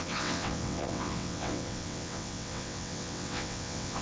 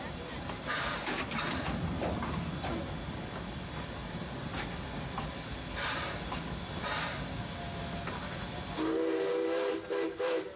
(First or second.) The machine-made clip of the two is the first